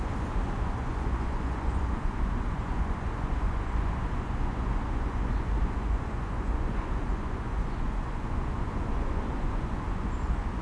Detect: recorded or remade remade